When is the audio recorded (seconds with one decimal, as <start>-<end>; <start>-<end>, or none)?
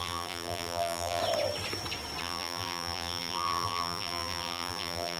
1.2-2.2